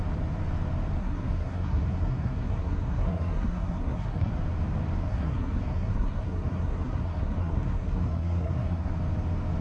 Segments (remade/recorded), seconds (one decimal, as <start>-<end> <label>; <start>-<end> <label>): 0.0-1.0 recorded; 1.0-4.3 remade; 4.3-5.0 recorded; 5.0-8.9 remade; 8.9-9.6 recorded